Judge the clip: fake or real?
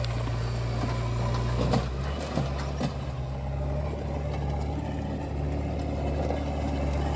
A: real